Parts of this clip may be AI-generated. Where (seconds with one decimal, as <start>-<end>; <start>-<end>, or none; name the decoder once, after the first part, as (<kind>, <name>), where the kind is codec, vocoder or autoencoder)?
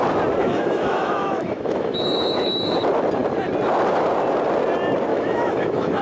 0.4-2.8 (autoencoder, DAC-VAE); 5.1-6.0